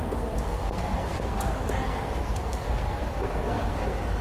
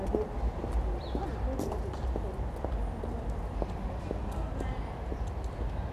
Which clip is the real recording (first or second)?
second